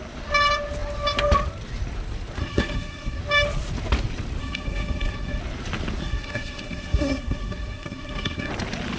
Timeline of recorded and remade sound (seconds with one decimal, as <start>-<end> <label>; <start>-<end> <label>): 0.0-2.4 recorded; 2.4-3.2 remade; 3.2-4.4 recorded; 4.4-5.4 remade; 5.4-6.0 recorded; 6.0-8.5 remade; 8.5-9.0 recorded